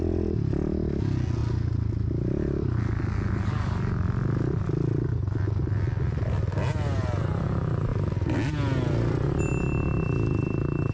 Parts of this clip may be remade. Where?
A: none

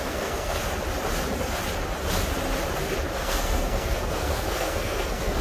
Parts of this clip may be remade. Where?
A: 0.0-0.6 (codec, SNAC); 3.1-5.4